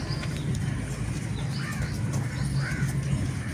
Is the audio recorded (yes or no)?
yes